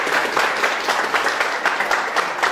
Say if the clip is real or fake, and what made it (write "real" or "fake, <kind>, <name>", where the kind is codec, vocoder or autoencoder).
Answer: real